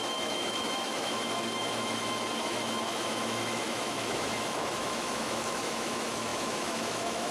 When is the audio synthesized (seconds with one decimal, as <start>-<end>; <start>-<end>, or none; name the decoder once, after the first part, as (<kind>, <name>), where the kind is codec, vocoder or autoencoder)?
0.0-7.3 (autoencoder, DAC-VAE)